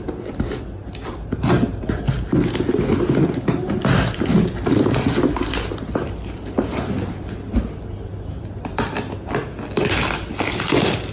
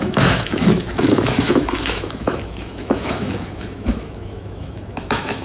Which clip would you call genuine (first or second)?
first